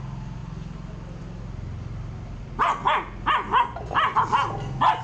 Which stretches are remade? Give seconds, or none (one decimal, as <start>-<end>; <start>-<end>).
none